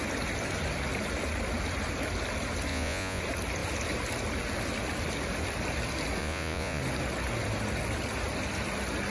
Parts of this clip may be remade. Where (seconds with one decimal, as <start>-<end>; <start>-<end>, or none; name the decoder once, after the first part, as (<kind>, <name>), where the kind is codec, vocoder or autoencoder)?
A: 2.7-3.2 (vocoder, Vocos); 6.2-6.8

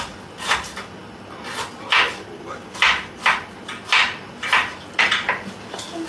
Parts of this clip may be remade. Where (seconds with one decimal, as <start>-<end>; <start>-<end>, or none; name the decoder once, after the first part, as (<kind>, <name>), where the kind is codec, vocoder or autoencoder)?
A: none

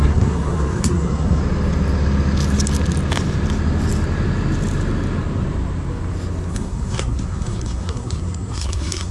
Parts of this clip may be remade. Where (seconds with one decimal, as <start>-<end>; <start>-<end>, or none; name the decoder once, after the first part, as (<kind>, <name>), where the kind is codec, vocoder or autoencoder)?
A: 0.0-1.4 (codec, SNAC); 6.5-9.1

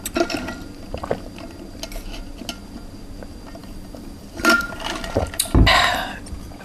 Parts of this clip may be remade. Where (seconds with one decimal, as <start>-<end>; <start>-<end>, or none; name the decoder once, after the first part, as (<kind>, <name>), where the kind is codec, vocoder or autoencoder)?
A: 3.6-5.2 (vocoder, BigVGAN v2)

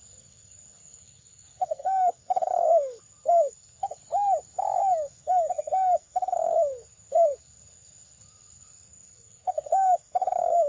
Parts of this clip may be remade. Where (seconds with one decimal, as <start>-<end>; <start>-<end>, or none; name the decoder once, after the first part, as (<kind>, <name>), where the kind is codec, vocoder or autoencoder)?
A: 0.0-4.0 (codec, SNAC); 5.0-10.7

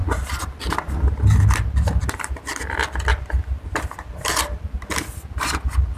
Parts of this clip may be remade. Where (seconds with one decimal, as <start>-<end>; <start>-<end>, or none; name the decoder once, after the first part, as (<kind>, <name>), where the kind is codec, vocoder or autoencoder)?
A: 0.0-1.4 (vocoder, BigVGAN v2); 3.1-5.1